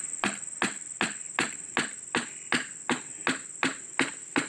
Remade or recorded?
recorded